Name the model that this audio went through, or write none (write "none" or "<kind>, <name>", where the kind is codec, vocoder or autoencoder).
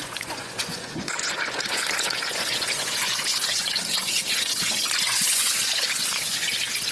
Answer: vocoder, Vocos